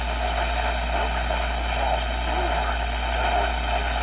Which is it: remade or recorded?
recorded